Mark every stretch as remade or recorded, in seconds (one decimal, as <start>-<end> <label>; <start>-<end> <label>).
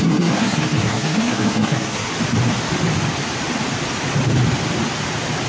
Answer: 0.0-2.1 remade; 2.1-5.5 recorded